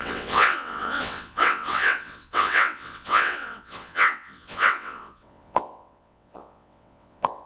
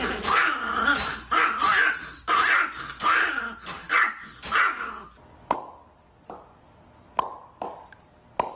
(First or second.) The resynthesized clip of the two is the first